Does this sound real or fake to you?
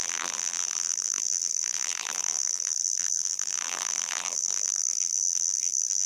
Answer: fake